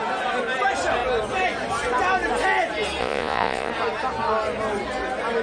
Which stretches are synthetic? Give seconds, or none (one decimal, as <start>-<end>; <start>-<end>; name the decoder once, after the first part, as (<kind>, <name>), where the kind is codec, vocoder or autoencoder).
3.0-3.7 (vocoder, Vocos)